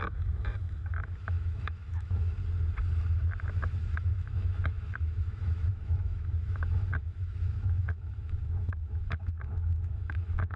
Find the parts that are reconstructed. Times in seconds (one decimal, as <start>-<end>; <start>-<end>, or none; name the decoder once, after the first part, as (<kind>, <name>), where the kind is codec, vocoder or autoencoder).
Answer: 0.0-2.4 (autoencoder, DAC-VAE); 3.5-10.6